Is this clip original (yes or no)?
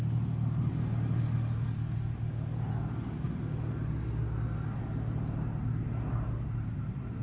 yes